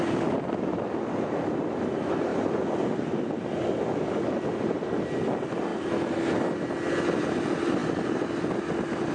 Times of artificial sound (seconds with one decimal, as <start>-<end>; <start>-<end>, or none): none